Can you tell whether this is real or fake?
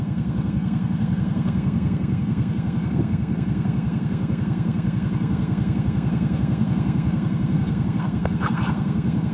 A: fake